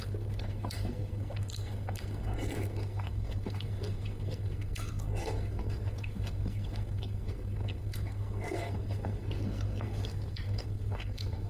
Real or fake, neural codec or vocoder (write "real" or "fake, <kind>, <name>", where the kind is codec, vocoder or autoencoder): fake, codec, SNAC